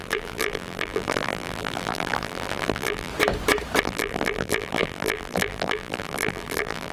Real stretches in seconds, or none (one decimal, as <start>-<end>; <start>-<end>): 3.1-3.8